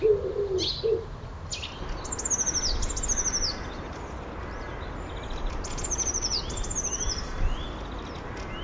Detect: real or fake real